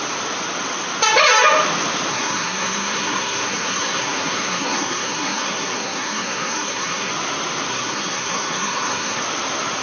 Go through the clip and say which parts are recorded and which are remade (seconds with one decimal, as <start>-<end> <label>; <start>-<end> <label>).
0.0-2.1 recorded; 2.1-7.1 remade; 7.1-7.7 recorded; 7.7-9.2 remade; 9.2-9.8 recorded